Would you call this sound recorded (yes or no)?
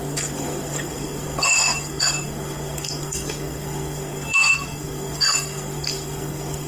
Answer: no